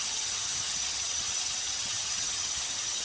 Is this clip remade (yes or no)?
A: yes